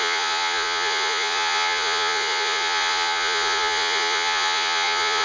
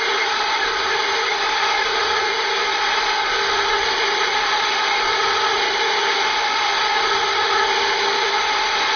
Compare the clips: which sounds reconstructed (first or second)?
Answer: first